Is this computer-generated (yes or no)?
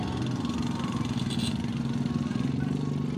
no